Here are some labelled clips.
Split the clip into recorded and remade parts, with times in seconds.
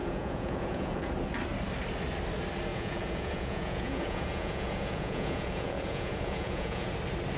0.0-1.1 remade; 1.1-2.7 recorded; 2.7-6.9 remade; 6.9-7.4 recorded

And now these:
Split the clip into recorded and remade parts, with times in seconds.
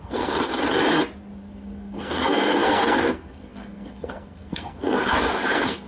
0.0-0.5 remade; 0.5-1.4 recorded; 1.4-5.9 remade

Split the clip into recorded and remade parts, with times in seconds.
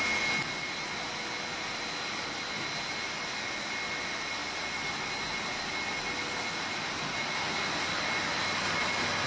0.0-9.3 recorded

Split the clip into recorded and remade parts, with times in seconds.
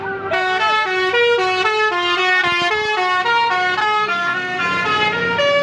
0.0-3.8 recorded; 3.8-4.6 remade; 4.6-5.6 recorded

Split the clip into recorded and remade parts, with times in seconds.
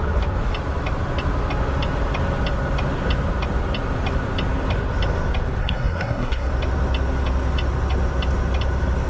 0.0-5.6 recorded; 5.6-6.5 remade; 6.5-9.1 recorded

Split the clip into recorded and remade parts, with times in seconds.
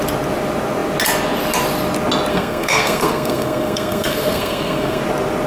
0.0-2.3 recorded; 2.3-5.0 remade; 5.0-5.5 recorded